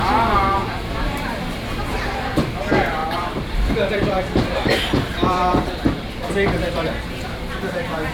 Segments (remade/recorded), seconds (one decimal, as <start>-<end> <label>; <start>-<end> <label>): 0.0-0.6 recorded; 0.6-1.9 remade; 1.9-3.0 recorded; 3.0-6.3 remade; 6.3-8.1 recorded